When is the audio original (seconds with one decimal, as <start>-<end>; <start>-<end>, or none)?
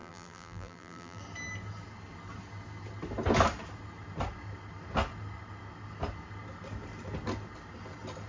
1.2-8.3